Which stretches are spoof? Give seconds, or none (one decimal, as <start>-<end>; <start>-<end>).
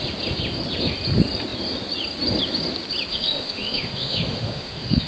3.1-5.1